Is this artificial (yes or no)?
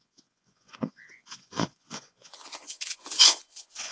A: yes